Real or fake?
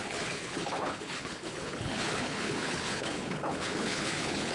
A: fake